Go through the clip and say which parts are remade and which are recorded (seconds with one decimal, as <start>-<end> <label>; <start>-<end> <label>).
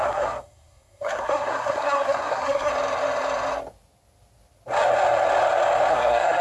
0.0-2.7 remade; 2.7-5.9 recorded; 5.9-6.4 remade